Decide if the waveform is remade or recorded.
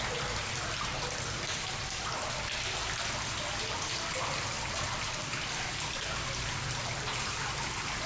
recorded